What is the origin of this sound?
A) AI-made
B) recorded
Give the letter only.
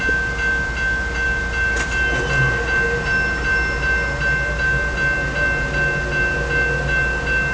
B